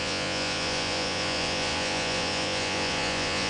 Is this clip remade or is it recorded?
remade